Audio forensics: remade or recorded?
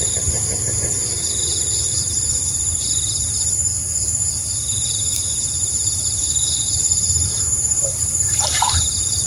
remade